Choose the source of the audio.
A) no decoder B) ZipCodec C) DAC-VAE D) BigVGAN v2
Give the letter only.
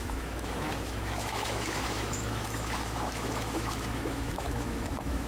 C